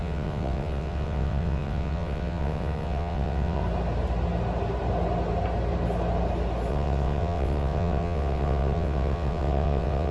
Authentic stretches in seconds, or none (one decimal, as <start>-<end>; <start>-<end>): 3.6-6.7